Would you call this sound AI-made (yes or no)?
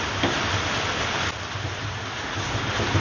no